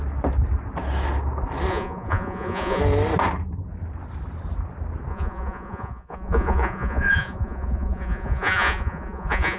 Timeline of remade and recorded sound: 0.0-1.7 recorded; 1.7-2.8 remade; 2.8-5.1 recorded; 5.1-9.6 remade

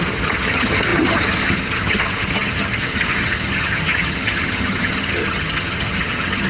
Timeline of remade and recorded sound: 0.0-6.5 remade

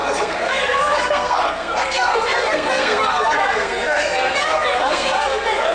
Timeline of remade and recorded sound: 0.0-5.7 remade

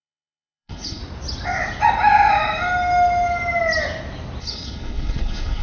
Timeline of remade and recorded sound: 0.0-1.0 remade; 1.0-4.4 recorded; 4.4-5.6 remade

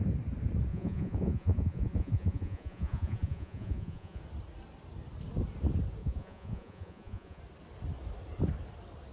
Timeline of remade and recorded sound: 0.0-0.7 recorded; 0.7-4.2 remade; 4.2-6.0 recorded; 6.0-7.4 remade; 7.4-9.1 recorded

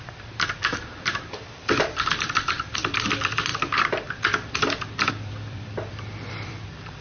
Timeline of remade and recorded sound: 0.0-7.0 remade